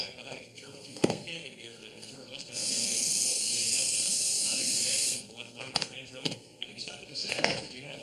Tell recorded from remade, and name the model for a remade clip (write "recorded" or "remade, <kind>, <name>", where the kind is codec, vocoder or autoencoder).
remade, codec, SNAC